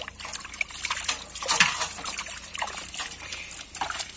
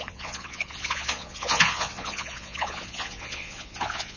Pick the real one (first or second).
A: first